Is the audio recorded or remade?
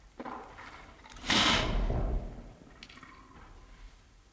recorded